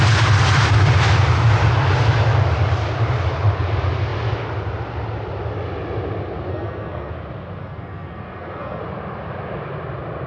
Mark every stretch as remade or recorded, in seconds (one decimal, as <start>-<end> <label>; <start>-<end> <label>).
0.0-6.5 recorded; 6.5-7.1 remade; 7.1-7.6 recorded; 7.6-8.8 remade; 8.8-10.3 recorded